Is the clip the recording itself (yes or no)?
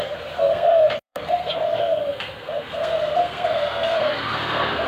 no